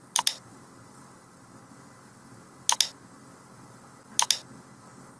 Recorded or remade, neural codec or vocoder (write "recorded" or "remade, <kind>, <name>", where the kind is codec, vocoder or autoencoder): recorded